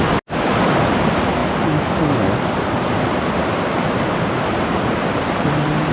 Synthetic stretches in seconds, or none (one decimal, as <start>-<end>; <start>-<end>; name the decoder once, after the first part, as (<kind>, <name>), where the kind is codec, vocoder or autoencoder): none